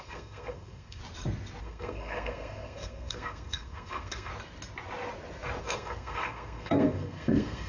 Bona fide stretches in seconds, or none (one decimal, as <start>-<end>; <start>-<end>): 1.0-1.6; 4.3-5.6